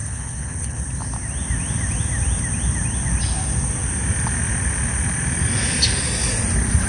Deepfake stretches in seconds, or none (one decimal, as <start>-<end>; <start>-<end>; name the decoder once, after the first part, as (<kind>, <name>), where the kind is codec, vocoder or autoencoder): 0.0-0.8 (codec, HILCodec)